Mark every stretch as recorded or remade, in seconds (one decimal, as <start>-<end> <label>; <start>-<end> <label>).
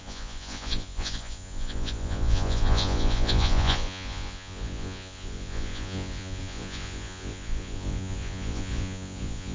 0.0-9.5 remade